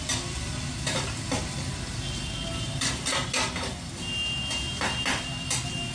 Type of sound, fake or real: real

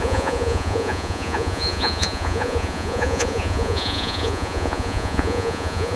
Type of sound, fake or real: fake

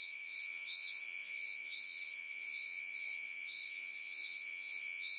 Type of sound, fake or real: fake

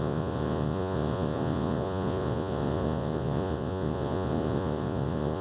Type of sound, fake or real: fake